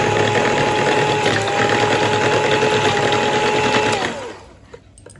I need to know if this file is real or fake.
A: real